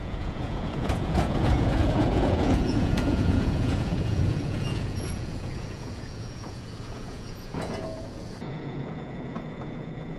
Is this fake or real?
fake